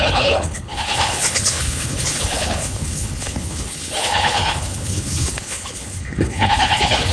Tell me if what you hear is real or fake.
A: fake